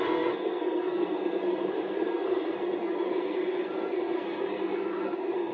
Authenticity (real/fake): fake